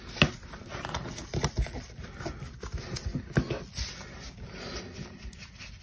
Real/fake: real